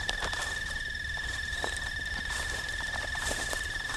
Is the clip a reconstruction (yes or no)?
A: yes